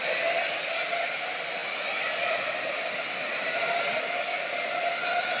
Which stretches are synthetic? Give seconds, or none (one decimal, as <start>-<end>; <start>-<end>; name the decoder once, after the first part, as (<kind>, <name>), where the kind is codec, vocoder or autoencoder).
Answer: none